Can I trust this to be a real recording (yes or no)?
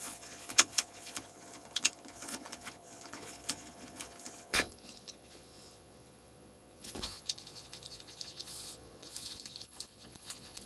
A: no